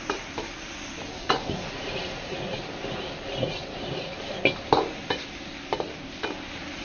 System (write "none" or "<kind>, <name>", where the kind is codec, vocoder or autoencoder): none